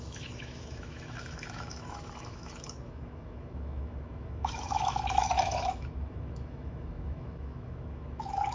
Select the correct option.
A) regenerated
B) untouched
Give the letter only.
A